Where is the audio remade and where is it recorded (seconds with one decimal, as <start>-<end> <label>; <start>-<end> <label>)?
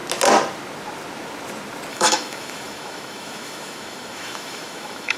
0.0-1.9 recorded; 1.9-5.2 remade